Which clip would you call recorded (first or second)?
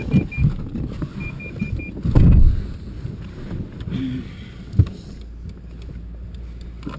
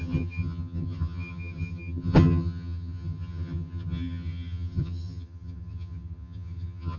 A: first